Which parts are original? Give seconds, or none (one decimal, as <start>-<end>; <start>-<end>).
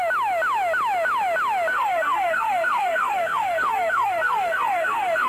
0.0-1.7